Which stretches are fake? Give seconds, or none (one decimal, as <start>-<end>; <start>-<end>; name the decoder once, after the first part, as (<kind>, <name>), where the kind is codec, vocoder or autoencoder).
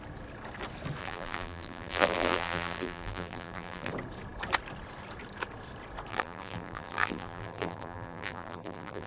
1.0-3.9 (vocoder, BigVGAN v2); 6.1-9.1